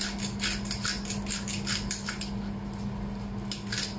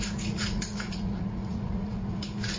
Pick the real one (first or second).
first